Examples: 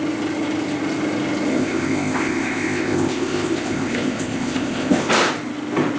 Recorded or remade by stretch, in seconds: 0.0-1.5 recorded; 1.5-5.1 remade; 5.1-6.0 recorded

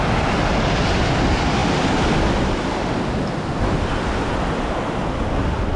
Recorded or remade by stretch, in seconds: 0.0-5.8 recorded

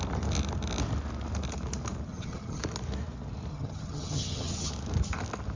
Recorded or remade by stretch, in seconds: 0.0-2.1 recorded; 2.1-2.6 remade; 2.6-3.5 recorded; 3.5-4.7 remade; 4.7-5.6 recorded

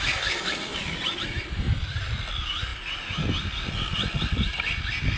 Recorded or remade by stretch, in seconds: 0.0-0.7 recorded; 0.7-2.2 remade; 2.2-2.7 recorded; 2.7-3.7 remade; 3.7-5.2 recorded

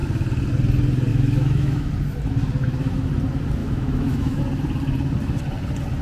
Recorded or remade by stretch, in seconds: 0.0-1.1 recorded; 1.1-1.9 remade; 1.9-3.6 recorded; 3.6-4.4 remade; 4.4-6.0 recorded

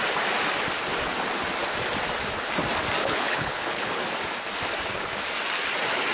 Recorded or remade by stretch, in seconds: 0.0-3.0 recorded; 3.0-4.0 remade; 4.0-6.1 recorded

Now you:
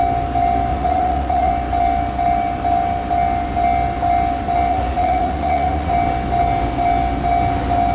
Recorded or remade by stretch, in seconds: 0.0-0.7 recorded; 0.7-1.5 remade; 1.5-4.7 recorded; 4.7-5.9 remade; 5.9-7.9 recorded

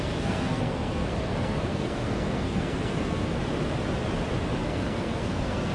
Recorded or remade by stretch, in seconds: 0.0-3.4 remade; 3.4-4.6 recorded; 4.6-5.7 remade